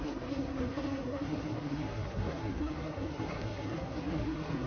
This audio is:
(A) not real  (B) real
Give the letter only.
A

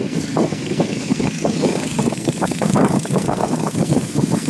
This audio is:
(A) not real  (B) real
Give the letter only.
A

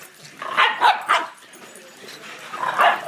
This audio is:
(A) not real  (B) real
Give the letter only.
B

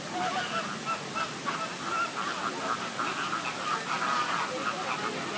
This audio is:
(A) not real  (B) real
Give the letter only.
B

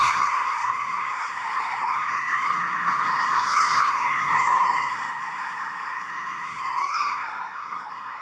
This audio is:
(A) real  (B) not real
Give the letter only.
B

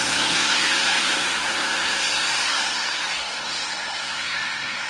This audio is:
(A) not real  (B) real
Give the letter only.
A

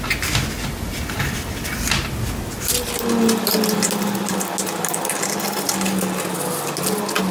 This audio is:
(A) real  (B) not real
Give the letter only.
A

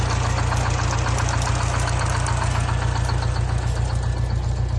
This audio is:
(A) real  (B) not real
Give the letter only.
A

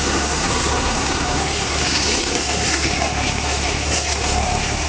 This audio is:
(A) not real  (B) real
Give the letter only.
A